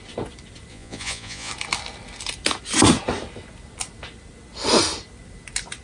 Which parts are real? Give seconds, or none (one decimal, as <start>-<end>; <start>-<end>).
0.0-0.7; 1.5-5.8